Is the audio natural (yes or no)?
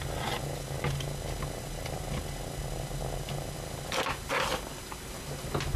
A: yes